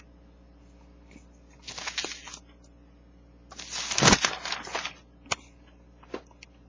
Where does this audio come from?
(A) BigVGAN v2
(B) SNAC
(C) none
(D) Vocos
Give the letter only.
C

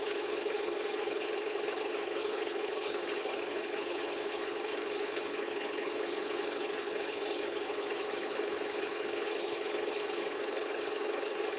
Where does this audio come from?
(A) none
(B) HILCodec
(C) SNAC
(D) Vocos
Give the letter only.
B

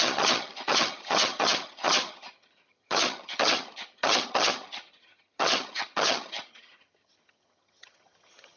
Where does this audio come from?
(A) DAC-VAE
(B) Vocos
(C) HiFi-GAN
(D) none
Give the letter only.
C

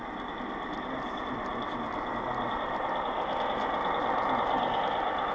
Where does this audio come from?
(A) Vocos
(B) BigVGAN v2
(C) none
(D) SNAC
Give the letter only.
C